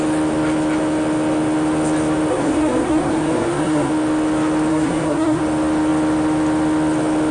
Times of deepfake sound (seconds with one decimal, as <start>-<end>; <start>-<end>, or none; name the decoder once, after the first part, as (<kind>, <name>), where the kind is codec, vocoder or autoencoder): 2.3-3.9 (codec, SNAC); 4.7-5.4